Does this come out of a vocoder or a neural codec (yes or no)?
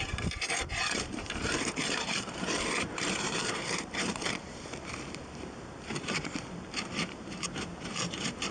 yes